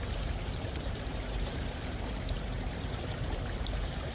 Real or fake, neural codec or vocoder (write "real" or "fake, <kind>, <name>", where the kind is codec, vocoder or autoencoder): fake, vocoder, BigVGAN v2